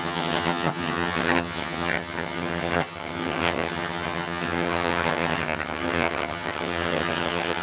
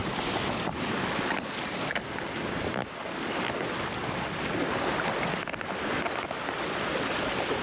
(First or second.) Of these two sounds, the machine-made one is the first